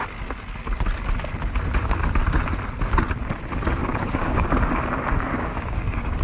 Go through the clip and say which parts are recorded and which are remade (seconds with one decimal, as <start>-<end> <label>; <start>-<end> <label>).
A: 0.0-3.9 recorded; 3.9-4.7 remade; 4.7-5.3 recorded; 5.3-6.2 remade